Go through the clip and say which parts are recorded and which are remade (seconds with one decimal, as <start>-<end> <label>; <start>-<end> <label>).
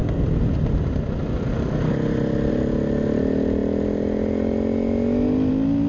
0.0-5.9 recorded